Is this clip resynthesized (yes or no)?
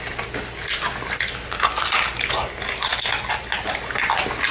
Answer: no